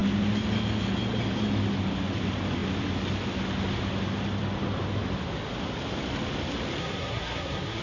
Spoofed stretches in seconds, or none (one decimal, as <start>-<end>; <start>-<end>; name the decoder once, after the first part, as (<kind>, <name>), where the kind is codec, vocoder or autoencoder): 6.8-7.8 (codec, SNAC)